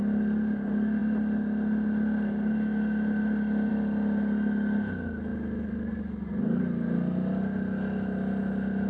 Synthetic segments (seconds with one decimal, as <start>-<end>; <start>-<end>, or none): none